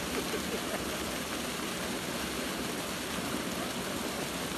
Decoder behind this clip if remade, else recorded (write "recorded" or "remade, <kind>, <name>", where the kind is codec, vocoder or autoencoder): recorded